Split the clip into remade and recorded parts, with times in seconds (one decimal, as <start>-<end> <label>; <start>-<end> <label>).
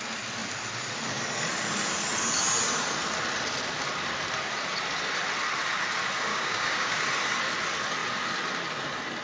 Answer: 0.0-6.3 recorded; 6.3-7.0 remade; 7.0-9.2 recorded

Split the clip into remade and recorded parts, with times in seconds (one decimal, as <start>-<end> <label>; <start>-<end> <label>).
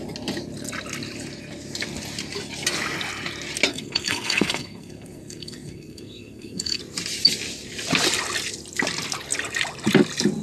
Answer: 0.0-3.7 recorded; 3.7-6.8 remade; 6.8-10.4 recorded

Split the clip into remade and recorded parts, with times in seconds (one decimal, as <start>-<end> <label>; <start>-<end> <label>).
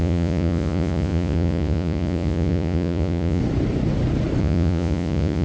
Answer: 0.0-3.4 remade; 3.4-4.4 recorded; 4.4-5.4 remade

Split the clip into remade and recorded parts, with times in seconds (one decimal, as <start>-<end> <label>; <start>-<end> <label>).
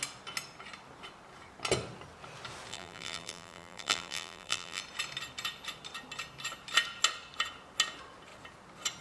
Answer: 0.0-2.7 recorded; 2.7-4.8 remade; 4.8-9.0 recorded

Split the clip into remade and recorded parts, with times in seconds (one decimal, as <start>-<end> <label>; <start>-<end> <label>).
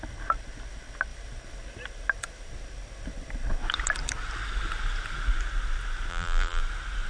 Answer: 0.0-6.1 recorded; 6.1-6.6 remade; 6.6-7.1 recorded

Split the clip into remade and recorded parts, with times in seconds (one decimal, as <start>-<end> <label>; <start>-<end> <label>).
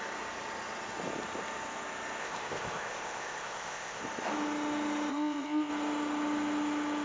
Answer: 0.0-2.2 recorded; 2.2-4.0 remade; 4.0-5.1 recorded; 5.1-5.7 remade; 5.7-7.0 recorded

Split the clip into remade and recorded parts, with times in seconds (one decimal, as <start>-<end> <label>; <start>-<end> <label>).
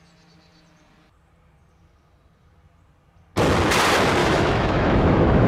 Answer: 0.0-4.2 recorded; 4.2-5.5 remade